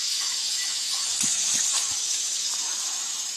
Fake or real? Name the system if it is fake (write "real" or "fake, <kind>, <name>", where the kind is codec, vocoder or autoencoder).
fake, autoencoder, DAC-VAE